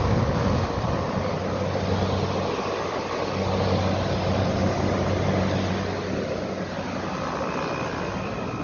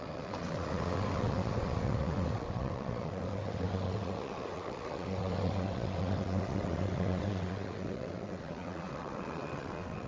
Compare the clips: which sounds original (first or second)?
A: first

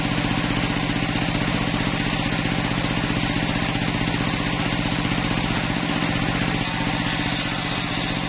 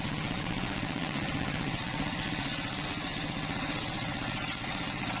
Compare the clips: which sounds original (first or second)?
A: first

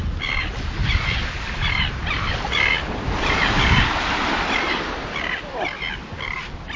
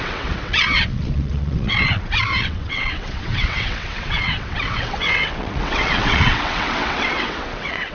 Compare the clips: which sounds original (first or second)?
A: first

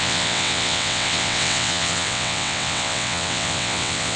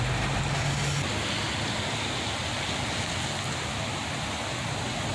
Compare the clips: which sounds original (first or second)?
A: second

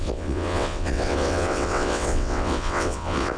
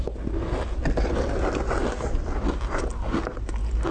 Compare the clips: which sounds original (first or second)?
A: second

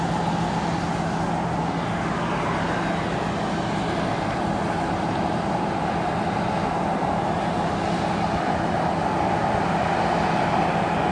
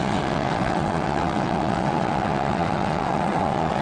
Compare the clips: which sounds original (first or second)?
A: first